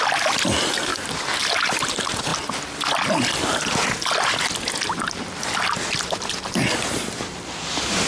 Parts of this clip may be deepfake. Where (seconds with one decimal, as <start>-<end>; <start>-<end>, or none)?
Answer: none